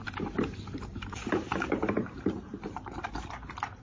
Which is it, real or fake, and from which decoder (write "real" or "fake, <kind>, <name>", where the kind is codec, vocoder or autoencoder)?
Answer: fake, vocoder, BigVGAN v2